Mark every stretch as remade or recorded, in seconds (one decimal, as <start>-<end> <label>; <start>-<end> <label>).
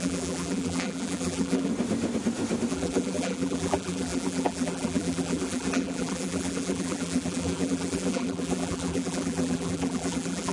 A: 0.0-1.7 remade; 1.7-2.7 recorded; 2.7-10.5 remade